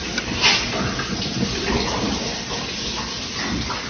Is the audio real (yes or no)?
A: yes